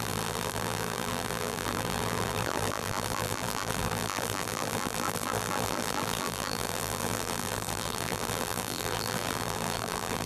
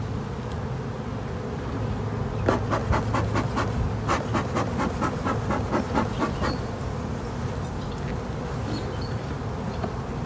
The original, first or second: second